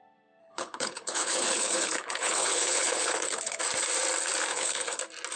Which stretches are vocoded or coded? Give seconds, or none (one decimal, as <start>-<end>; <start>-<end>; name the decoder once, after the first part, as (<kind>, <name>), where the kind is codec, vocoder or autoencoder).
0.4-3.6 (codec, HILCodec); 4.5-5.0